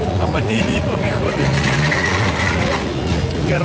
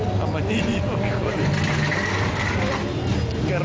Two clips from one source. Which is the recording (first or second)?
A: second